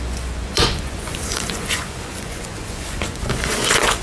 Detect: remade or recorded remade